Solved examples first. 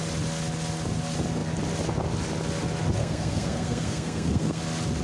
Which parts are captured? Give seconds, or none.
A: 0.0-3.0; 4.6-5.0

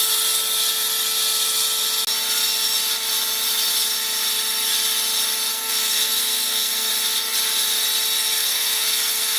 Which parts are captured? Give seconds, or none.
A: 0.0-5.5; 6.9-8.4

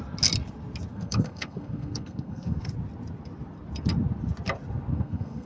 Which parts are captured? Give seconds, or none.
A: 0.0-0.9; 2.7-4.9

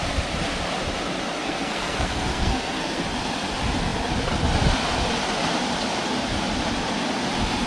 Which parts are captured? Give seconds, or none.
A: 0.0-1.4; 3.0-7.7

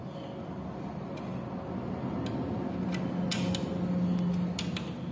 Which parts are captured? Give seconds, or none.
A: 0.0-5.1